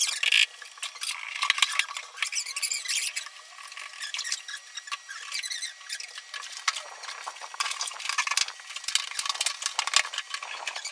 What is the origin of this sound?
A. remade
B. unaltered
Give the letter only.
B